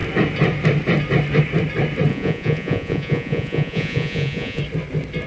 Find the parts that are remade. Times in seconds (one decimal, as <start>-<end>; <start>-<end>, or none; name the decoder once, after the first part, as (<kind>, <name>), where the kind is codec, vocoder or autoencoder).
2.1-4.6 (vocoder, Vocos)